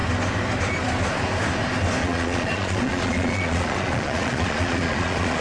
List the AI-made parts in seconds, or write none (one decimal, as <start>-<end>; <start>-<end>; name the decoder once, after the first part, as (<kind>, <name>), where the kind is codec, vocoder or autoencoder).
2.0-5.4 (vocoder, Vocos)